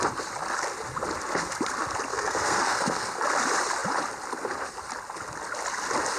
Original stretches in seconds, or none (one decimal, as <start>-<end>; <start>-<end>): 0.0-2.1; 3.2-6.2